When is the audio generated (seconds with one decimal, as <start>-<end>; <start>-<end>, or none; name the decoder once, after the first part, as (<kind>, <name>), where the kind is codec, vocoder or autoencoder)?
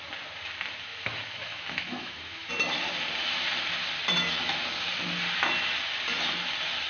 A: 0.9-2.5 (autoencoder, DAC-VAE)